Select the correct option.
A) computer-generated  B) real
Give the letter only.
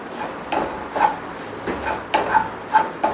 B